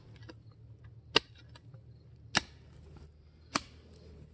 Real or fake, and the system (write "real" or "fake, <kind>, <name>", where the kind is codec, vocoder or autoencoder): real